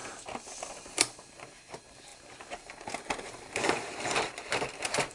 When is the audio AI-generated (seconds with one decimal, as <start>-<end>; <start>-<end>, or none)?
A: 0.7-5.1